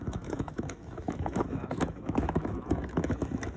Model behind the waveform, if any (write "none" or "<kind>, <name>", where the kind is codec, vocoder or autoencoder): autoencoder, DAC-VAE